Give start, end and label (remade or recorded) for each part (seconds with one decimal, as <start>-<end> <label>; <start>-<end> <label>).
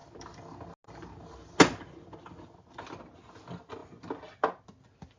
0.0-5.2 recorded